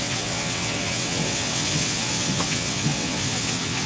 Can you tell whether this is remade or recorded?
remade